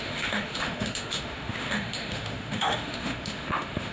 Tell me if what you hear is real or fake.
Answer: fake